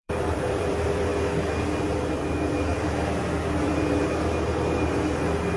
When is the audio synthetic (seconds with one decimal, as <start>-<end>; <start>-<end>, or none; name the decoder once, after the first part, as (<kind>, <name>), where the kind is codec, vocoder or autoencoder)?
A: 0.0-1.1 (vocoder, BigVGAN v2); 2.1-2.7